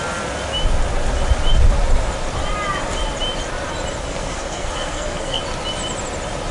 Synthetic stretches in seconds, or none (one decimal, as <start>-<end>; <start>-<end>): 4.0-5.4